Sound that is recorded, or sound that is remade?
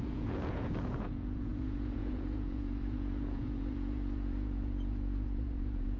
remade